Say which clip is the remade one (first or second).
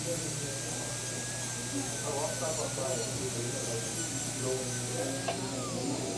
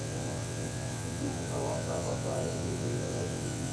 second